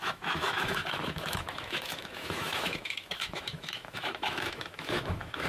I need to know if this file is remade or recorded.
remade